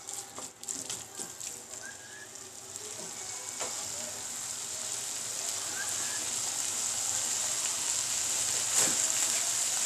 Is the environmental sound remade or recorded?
recorded